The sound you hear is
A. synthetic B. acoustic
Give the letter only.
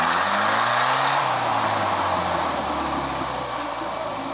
B